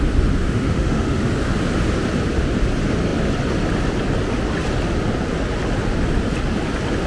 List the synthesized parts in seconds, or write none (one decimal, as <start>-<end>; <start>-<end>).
0.4-1.3

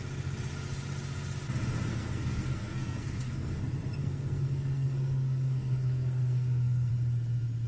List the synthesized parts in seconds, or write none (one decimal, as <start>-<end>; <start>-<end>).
1.9-3.6; 4.0-6.9